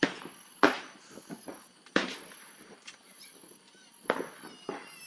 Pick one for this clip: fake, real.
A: fake